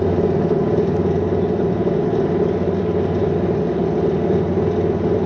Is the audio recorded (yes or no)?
yes